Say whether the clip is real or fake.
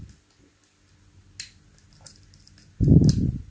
real